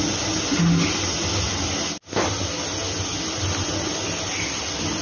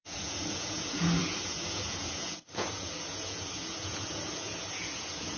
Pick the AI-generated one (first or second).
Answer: second